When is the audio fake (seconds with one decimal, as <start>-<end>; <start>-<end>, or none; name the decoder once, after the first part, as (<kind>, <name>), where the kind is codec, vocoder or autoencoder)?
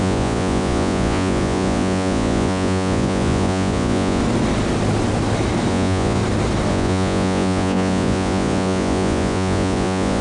0.0-4.2 (vocoder, Vocos); 5.7-6.2; 6.7-10.2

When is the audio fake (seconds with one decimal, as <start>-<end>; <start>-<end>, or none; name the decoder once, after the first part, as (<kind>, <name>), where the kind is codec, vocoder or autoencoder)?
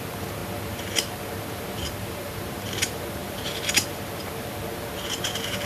0.0-5.7 (vocoder, BigVGAN v2)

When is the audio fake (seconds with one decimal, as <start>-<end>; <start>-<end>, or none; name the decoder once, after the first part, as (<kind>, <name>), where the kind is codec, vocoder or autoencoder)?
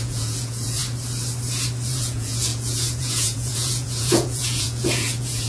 0.0-0.8 (vocoder, Vocos); 1.9-5.5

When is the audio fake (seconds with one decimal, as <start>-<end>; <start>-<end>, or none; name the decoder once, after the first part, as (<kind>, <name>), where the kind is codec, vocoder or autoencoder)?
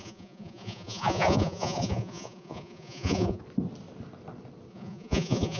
0.0-3.4 (vocoder, Vocos); 4.7-5.6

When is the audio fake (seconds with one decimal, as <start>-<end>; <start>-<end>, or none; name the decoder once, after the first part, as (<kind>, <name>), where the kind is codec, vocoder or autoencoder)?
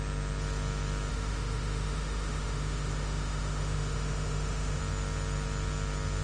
1.1-4.8 (autoencoder, DAC-VAE)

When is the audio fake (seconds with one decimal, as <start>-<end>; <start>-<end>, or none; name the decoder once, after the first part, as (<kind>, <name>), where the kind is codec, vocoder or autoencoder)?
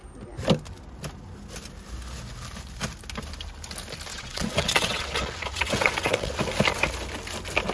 4.1-6.4 (vocoder, WaveNeXt)